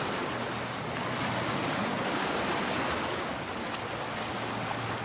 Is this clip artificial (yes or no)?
no